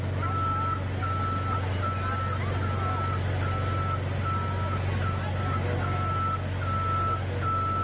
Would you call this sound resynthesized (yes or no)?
no